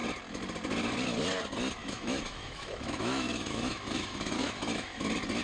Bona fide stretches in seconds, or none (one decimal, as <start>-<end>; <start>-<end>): 0.0-1.8; 5.0-5.4